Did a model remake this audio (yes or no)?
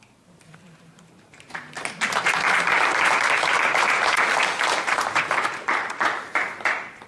yes